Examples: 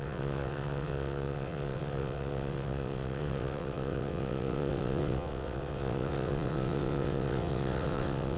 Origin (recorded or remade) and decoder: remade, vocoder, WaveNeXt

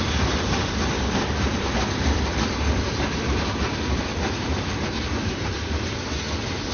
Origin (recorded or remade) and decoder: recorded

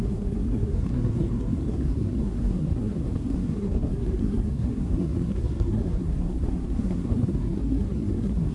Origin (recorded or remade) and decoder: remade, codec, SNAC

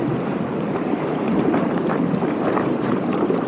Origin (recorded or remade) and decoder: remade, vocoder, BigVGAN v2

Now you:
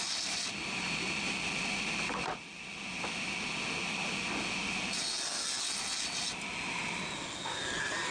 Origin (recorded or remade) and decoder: recorded